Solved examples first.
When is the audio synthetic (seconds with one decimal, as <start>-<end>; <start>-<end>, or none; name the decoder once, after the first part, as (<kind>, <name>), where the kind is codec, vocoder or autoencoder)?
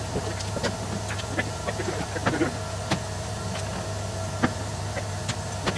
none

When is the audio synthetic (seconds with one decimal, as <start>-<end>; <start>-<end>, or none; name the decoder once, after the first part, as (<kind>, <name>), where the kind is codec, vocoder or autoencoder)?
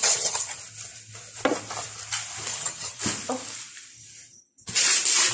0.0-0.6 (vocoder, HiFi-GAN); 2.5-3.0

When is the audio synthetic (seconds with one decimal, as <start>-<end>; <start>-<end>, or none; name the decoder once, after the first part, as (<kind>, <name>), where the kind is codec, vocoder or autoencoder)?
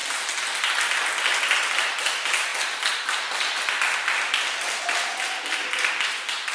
none